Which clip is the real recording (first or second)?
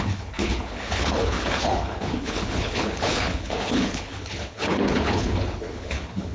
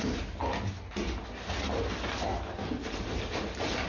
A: second